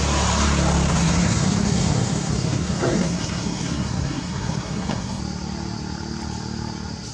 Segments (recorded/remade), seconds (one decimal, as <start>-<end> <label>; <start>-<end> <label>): 0.0-0.9 recorded; 0.9-5.2 remade; 5.2-7.1 recorded